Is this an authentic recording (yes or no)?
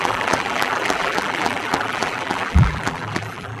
no